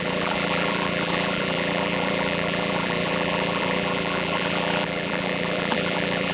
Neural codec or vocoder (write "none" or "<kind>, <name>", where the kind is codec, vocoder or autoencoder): vocoder, BigVGAN v2